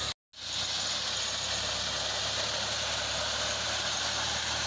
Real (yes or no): yes